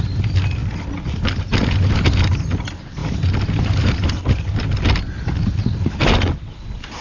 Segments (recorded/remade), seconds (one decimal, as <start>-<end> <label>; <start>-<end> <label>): 0.0-7.0 recorded